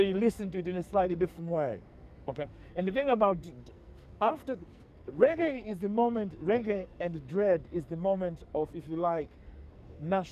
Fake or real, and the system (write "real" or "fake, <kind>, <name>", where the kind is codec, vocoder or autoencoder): fake, codec, SNAC